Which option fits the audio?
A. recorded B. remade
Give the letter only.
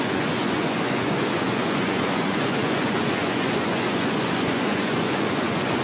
B